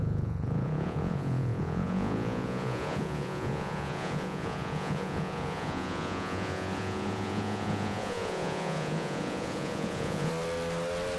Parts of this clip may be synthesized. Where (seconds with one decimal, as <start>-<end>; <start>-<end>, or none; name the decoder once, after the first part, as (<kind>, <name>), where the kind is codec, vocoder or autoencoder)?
0.0-10.3 (vocoder, Vocos)